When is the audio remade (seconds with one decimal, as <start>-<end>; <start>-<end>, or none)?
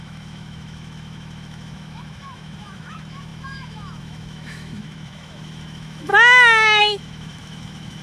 0.0-6.1; 6.8-8.0